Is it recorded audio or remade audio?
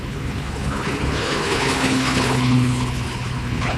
remade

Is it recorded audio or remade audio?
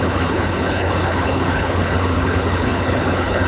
remade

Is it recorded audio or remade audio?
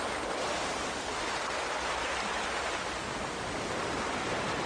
recorded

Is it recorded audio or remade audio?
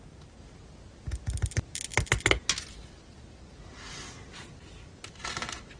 recorded